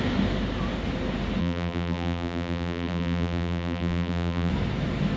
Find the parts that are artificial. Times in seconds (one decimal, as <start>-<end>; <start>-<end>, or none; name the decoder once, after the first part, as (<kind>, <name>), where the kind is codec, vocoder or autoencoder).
1.4-4.5 (vocoder, BigVGAN v2)